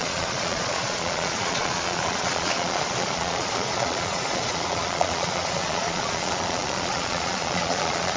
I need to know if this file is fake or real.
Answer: fake